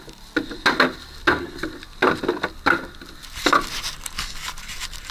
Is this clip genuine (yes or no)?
yes